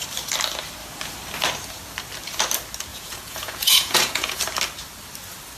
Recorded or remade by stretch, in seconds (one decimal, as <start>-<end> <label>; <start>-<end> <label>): 0.0-2.9 recorded; 2.9-4.4 remade; 4.4-5.6 recorded